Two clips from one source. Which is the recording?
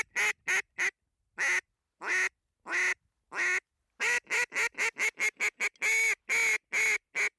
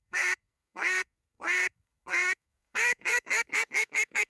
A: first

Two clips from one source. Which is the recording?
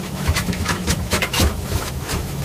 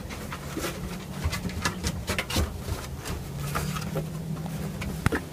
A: second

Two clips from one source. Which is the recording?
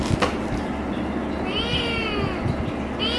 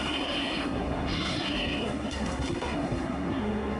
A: first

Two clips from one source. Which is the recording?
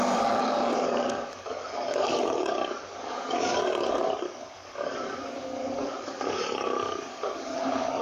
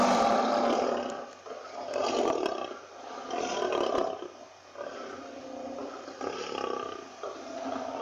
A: second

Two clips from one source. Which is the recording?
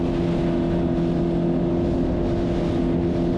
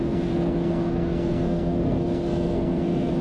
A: first